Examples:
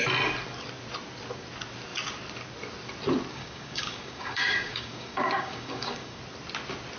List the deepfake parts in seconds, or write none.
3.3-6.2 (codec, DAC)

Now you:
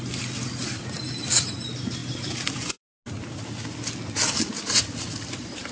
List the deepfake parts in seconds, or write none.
none